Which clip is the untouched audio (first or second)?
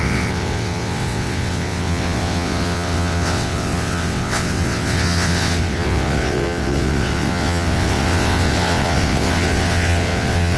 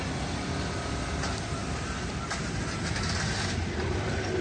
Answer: second